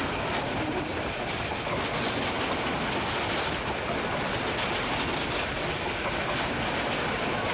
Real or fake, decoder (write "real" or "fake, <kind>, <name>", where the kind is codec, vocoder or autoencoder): real